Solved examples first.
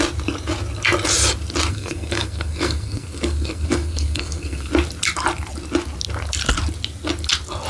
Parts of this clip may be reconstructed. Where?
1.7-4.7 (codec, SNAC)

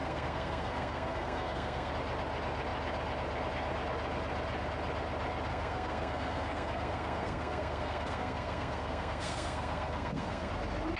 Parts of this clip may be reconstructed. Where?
0.0-1.9 (codec, SNAC); 5.5-10.5

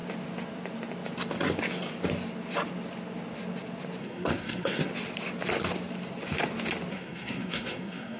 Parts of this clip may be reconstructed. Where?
4.0-4.9 (codec, SNAC); 6.9-8.2